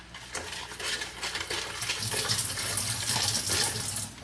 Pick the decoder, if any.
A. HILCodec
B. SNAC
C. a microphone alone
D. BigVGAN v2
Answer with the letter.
C